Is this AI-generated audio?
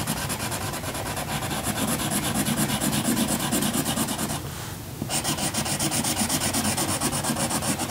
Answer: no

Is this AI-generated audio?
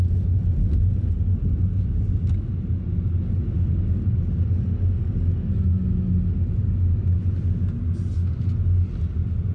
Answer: no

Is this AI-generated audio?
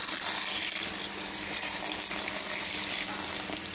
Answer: no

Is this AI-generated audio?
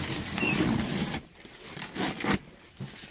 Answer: no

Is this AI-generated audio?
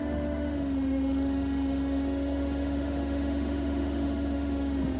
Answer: yes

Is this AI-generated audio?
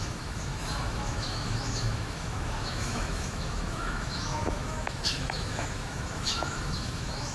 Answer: yes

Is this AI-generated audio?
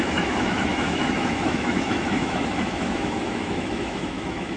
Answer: yes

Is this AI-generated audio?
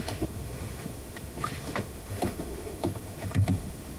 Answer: yes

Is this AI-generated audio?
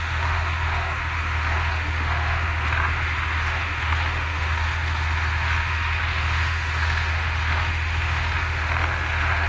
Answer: yes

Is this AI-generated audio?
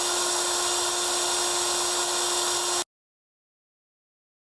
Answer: no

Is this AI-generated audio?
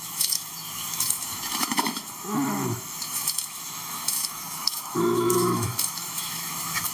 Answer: yes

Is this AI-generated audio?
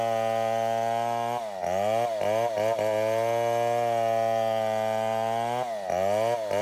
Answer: no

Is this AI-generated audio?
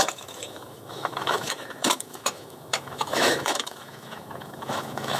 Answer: yes